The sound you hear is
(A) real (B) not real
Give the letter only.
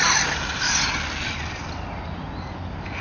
A